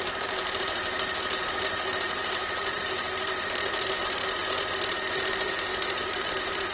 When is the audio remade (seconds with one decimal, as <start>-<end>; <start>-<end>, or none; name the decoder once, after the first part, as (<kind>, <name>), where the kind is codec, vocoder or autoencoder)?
0.0-4.2 (vocoder, BigVGAN v2); 5.2-6.7